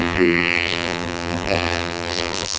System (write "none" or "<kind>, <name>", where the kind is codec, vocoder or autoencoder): vocoder, BigVGAN v2